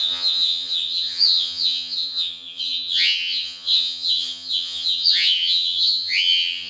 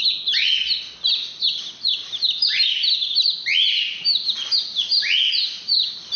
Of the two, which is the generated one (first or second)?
first